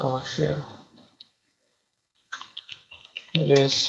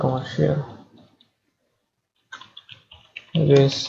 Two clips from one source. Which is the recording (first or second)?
second